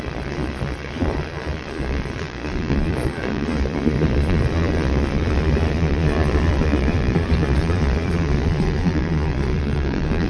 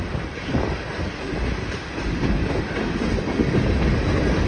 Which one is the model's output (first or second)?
first